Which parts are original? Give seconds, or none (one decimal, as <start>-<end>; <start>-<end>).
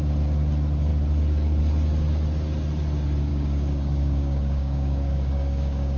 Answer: 0.0-3.3